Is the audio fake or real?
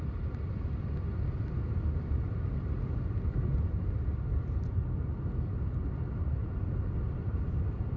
real